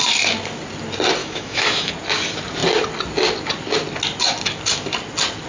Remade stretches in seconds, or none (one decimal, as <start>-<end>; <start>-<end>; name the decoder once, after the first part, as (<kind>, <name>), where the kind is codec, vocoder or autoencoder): 1.2-1.9 (autoencoder, DAC-VAE)